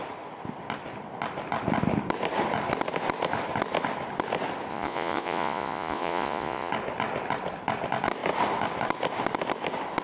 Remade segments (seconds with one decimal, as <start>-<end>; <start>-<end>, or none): 4.7-6.7